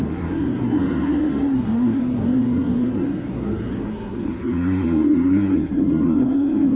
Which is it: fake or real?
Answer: fake